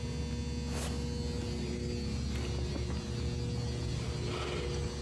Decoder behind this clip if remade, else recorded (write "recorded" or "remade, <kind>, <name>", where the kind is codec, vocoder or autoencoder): recorded